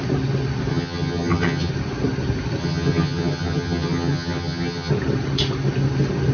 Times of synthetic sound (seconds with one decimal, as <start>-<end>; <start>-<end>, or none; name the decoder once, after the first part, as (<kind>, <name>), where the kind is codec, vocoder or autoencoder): 0.7-1.7 (vocoder, HiFi-GAN); 2.6-4.9